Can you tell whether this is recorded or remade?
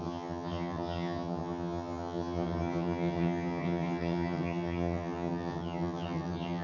remade